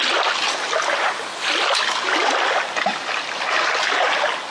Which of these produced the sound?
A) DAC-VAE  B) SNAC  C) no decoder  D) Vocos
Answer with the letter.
C